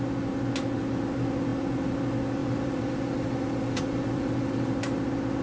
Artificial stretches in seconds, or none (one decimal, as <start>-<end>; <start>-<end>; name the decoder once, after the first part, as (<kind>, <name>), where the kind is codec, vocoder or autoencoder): 2.4-4.7 (vocoder, BigVGAN v2)